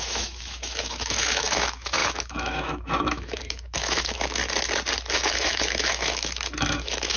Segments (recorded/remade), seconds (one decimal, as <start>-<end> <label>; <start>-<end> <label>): 0.0-4.4 remade; 4.4-5.1 recorded; 5.1-7.2 remade